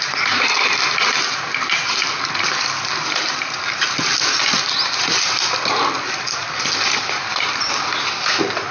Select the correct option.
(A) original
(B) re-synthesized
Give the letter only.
A